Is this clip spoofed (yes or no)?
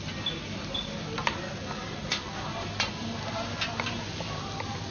no